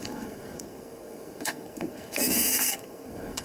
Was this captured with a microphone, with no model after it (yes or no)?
no